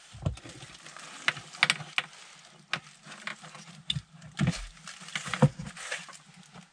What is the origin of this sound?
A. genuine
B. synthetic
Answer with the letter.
A